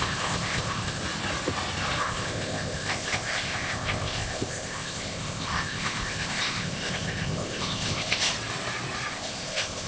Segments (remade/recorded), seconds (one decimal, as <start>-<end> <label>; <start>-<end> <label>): 0.0-1.0 remade; 1.0-2.0 recorded; 2.0-8.3 remade; 8.3-9.1 recorded; 9.1-9.9 remade